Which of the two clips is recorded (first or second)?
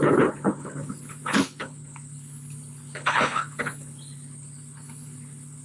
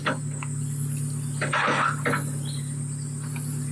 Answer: second